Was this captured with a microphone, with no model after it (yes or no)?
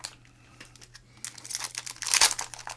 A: yes